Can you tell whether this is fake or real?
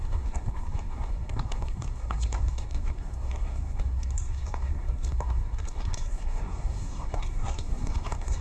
fake